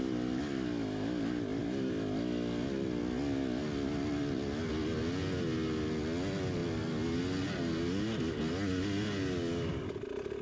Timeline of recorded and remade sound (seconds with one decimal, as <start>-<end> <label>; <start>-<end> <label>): 0.0-10.4 recorded